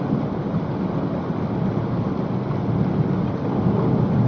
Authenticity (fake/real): real